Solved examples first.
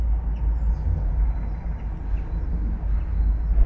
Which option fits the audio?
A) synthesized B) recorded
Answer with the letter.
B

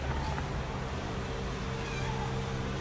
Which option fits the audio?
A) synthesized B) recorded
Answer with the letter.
B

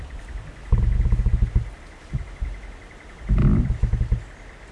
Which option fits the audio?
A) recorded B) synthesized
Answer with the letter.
A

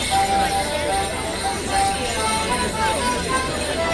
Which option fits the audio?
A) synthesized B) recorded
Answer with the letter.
B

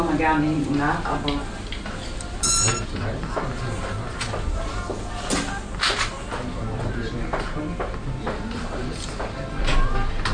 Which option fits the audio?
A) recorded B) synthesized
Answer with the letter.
A